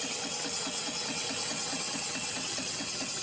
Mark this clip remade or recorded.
remade